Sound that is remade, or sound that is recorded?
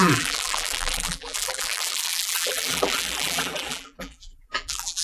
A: remade